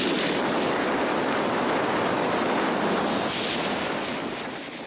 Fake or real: real